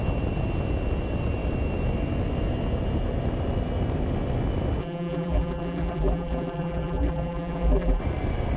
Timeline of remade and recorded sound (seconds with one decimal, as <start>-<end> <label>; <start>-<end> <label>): 0.0-4.8 recorded; 4.8-8.0 remade; 8.0-8.6 recorded